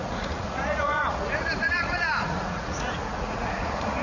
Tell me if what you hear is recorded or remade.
remade